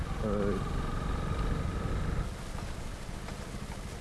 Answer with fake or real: real